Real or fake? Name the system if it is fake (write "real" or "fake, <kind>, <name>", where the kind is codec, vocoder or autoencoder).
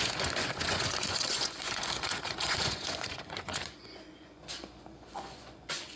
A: fake, vocoder, Vocos